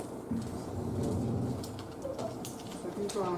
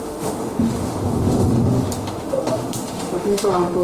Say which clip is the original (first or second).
first